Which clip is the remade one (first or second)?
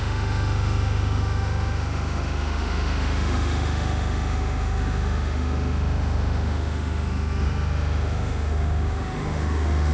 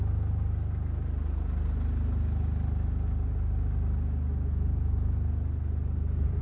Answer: first